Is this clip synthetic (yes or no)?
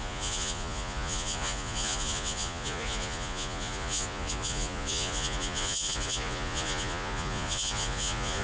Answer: yes